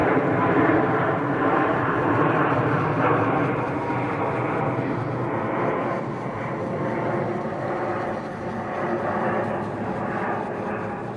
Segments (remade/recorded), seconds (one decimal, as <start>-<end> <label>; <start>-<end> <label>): 0.0-3.4 remade; 3.4-11.2 recorded